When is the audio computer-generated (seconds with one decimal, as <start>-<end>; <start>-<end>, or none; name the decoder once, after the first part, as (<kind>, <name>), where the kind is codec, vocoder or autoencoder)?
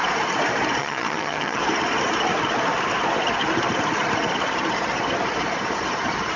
0.8-1.6 (vocoder, HiFi-GAN)